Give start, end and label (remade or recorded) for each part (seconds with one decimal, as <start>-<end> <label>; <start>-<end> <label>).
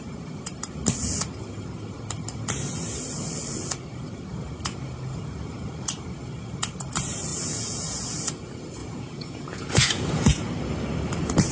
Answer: 0.0-7.3 recorded; 7.3-8.1 remade; 8.1-8.8 recorded; 8.8-10.5 remade; 10.5-11.5 recorded